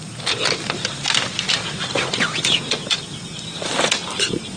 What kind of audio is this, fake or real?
real